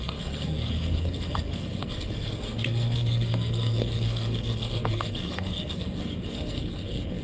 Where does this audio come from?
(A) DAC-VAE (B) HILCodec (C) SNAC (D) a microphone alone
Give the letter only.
C